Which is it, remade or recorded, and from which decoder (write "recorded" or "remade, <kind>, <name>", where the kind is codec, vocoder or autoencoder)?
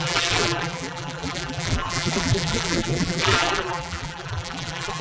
remade, vocoder, BigVGAN v2